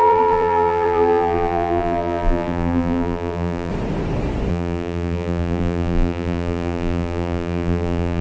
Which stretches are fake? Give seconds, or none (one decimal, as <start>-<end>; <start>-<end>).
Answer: 0.0-3.7; 4.5-8.2